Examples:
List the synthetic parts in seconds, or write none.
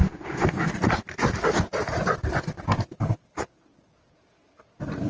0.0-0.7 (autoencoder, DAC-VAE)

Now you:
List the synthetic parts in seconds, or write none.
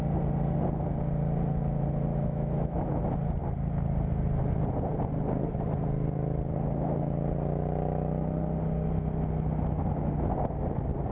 2.1-3.0 (autoencoder, DAC-VAE)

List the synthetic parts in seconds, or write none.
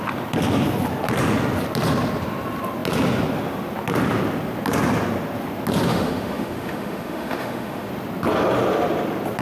5.9-7.9 (autoencoder, DAC-VAE)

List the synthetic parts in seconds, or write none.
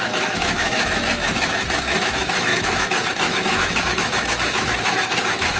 0.0-5.6 (autoencoder, DAC-VAE)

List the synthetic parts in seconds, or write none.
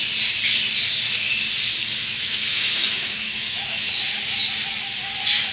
2.0-3.9 (autoencoder, DAC-VAE)